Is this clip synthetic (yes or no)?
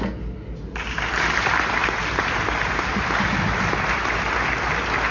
no